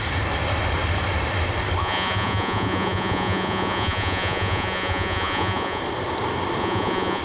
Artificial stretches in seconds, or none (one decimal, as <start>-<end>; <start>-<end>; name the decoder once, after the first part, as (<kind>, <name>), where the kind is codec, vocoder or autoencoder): 1.8-5.8 (vocoder, Vocos); 6.6-7.2